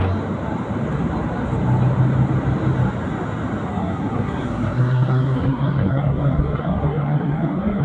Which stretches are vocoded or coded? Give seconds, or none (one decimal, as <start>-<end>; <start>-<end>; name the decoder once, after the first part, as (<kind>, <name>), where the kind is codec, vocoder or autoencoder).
3.7-7.8 (codec, SNAC)